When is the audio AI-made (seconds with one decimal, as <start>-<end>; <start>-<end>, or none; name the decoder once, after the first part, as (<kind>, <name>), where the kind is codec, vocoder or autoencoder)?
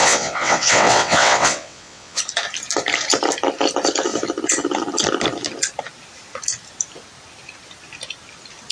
0.0-2.2 (vocoder, WaveNeXt)